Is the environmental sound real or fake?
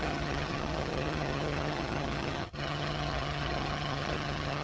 fake